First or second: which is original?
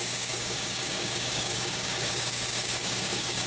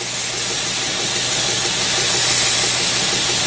second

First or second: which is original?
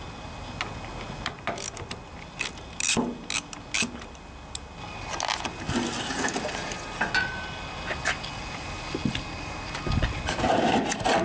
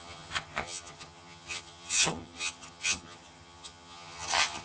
first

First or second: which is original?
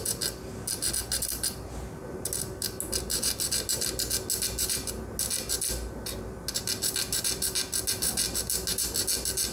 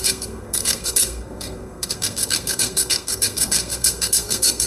first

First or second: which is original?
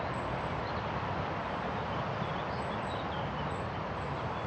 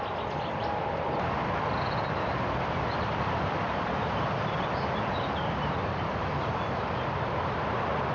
first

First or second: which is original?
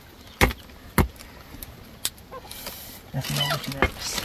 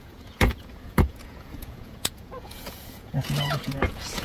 first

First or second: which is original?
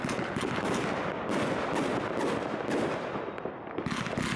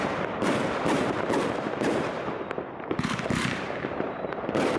first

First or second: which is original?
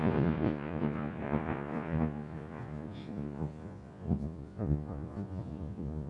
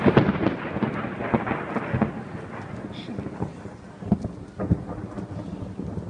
second